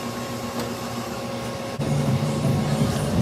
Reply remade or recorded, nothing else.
recorded